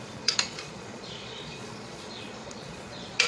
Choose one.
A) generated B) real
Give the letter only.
A